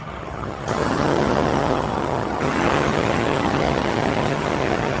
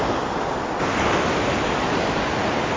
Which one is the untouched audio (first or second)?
second